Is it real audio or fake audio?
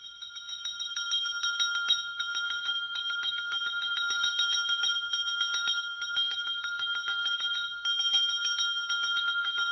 fake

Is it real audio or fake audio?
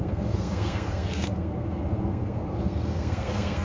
fake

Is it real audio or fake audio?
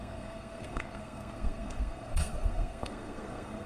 fake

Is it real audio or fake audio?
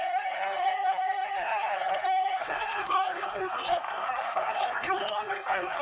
fake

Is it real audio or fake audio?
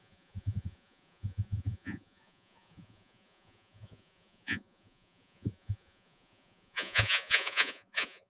fake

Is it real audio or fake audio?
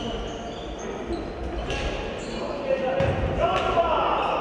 real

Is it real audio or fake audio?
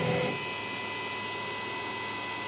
real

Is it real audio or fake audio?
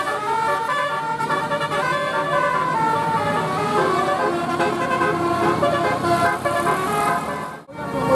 real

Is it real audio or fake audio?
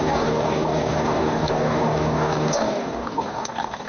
fake